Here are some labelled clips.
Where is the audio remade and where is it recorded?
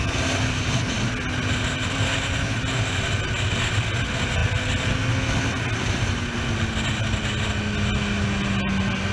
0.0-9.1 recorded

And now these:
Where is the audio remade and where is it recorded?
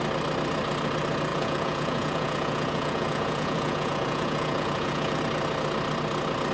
0.0-1.3 recorded; 1.3-5.2 remade; 5.2-6.5 recorded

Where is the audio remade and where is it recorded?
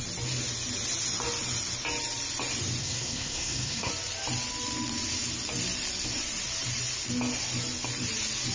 0.0-2.8 recorded; 2.8-3.9 remade; 3.9-8.5 recorded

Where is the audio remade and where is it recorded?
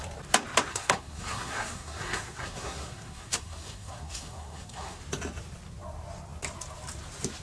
0.0-0.7 recorded; 0.7-5.0 remade; 5.0-7.4 recorded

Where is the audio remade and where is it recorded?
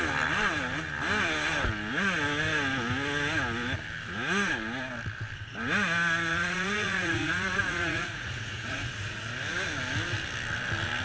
0.0-6.3 recorded; 6.3-9.2 remade; 9.2-11.0 recorded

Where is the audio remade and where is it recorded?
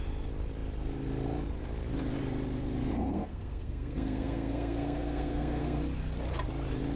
0.0-2.8 recorded; 2.8-5.8 remade; 5.8-7.0 recorded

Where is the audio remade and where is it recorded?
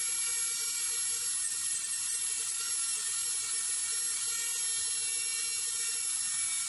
0.0-1.5 recorded; 1.5-2.6 remade; 2.6-5.1 recorded; 5.1-6.2 remade; 6.2-6.7 recorded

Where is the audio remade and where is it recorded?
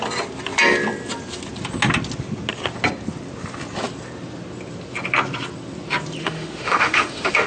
0.0-6.2 recorded; 6.2-7.5 remade